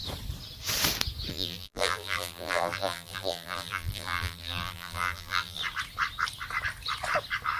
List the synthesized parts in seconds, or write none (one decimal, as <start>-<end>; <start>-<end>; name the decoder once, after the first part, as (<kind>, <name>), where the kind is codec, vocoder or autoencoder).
1.3-5.6 (vocoder, BigVGAN v2)